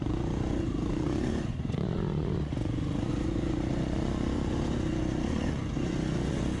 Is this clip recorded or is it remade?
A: remade